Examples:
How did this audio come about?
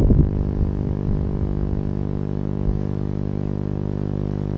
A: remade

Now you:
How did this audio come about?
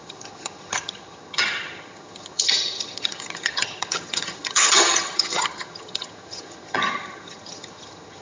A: remade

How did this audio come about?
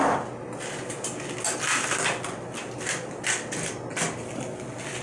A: recorded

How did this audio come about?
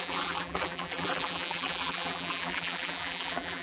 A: remade